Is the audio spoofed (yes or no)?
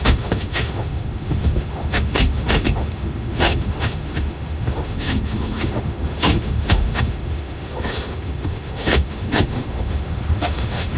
yes